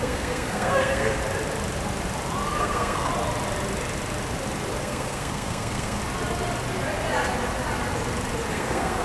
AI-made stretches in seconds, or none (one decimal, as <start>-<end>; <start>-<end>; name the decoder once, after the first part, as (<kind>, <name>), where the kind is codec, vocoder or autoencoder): 0.0-1.2 (codec, SNAC); 2.6-3.1; 4.8-6.0; 8.5-9.0